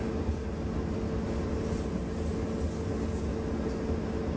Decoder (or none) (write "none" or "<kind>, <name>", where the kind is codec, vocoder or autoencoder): none